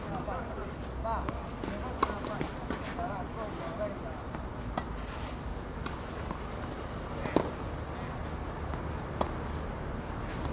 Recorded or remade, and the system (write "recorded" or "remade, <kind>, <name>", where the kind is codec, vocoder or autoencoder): recorded